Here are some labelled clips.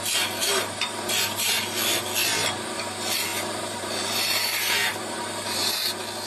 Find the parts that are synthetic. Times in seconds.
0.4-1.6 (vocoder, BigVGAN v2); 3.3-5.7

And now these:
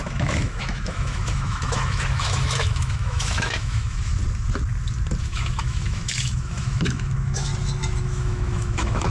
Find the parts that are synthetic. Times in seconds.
0.0-4.2 (autoencoder, DAC-VAE); 5.2-7.5; 8.0-9.1

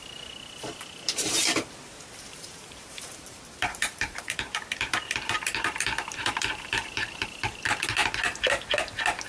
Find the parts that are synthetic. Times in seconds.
2.3-7.6 (vocoder, BigVGAN v2)

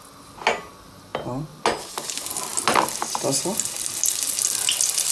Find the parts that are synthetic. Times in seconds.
none

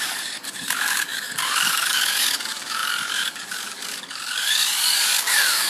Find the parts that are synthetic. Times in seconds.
0.0-5.7 (codec, DAC)